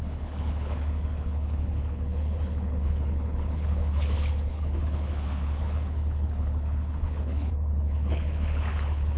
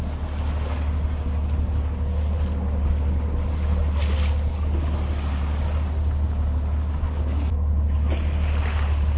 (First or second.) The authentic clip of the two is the second